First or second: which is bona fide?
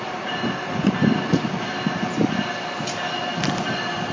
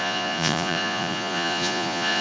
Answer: first